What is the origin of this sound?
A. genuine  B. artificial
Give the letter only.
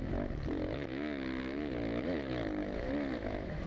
B